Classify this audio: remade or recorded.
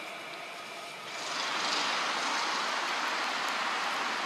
recorded